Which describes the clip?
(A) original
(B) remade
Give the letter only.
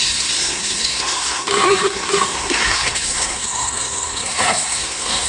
B